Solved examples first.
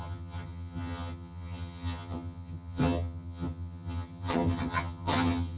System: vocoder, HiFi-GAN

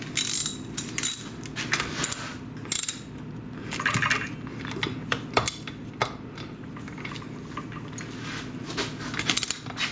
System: none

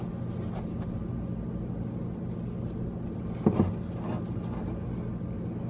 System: none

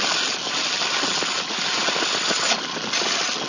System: none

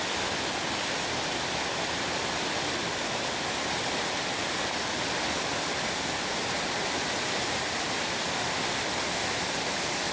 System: none